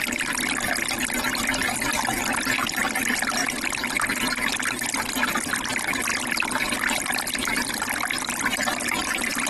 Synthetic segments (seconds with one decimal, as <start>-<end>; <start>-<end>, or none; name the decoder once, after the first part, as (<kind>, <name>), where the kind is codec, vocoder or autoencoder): none